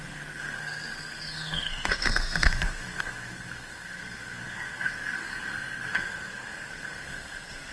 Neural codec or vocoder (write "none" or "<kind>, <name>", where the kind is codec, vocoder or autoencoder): codec, SNAC